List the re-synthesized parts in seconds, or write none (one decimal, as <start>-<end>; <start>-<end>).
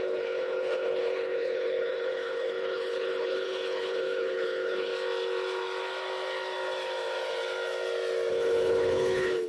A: 0.0-4.9; 8.3-9.5